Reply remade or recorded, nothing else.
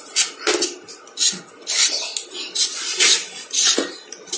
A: recorded